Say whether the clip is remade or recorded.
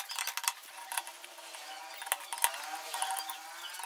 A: recorded